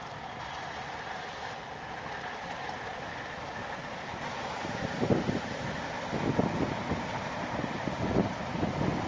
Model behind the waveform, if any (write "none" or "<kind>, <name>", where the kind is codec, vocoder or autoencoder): none